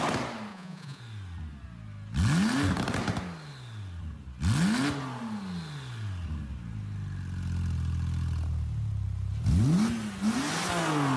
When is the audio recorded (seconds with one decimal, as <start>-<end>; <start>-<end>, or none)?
0.0-0.5; 1.0-11.2